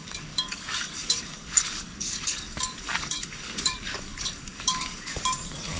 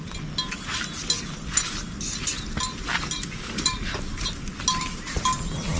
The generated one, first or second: first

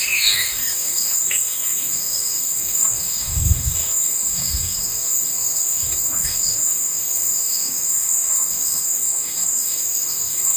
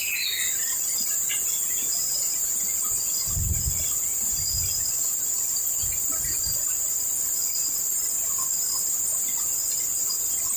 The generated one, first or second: first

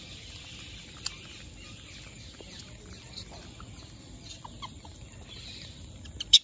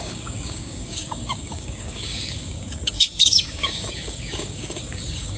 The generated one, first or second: second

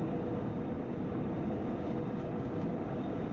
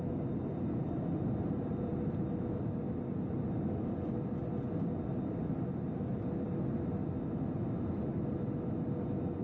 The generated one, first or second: first